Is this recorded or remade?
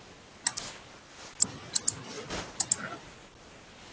recorded